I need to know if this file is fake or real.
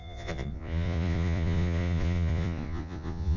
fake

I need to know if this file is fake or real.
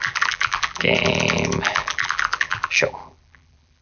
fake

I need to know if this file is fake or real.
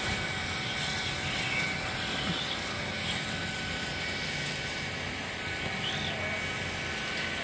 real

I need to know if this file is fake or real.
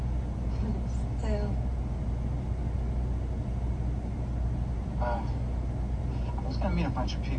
real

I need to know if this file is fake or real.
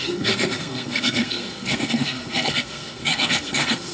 fake